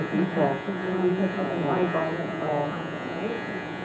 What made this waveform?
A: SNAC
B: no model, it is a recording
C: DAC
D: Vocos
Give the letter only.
D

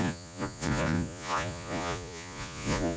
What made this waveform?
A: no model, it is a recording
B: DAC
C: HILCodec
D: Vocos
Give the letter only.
D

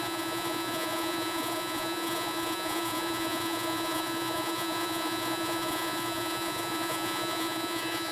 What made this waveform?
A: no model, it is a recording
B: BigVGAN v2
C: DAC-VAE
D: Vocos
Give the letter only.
D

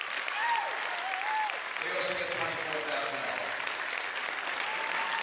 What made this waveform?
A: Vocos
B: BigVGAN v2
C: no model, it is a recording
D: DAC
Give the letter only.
C